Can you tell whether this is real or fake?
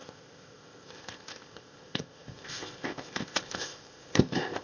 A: fake